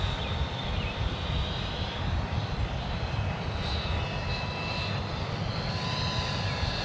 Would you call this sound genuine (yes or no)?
yes